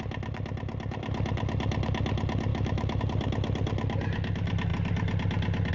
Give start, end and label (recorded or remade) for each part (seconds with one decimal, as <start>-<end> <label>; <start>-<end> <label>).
0.0-2.5 recorded; 2.5-3.0 remade; 3.0-5.7 recorded